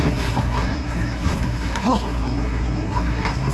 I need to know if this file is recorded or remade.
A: remade